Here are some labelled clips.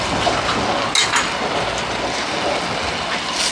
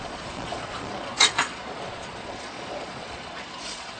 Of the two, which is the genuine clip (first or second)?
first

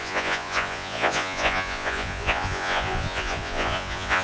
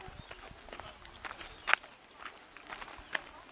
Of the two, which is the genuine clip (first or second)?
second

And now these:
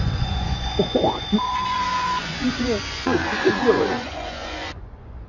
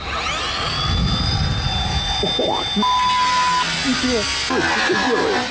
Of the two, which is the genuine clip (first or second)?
second